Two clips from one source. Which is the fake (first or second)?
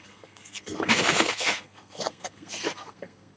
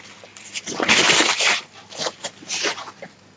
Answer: first